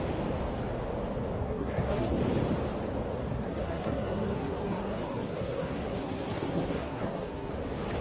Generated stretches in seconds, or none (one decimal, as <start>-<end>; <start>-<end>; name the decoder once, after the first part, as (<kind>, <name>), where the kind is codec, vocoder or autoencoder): 1.4-2.2 (codec, SNAC); 3.2-7.5